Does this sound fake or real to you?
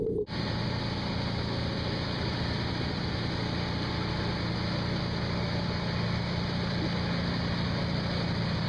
real